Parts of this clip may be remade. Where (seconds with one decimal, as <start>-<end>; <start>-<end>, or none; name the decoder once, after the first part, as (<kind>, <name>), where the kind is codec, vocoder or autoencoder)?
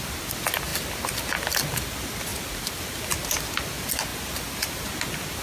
4.1-4.9 (vocoder, BigVGAN v2)